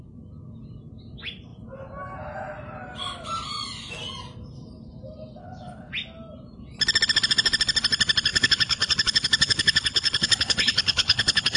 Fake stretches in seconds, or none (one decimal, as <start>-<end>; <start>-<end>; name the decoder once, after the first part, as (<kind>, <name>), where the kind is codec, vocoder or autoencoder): 5.4-5.9 (codec, HILCodec); 8.3-11.6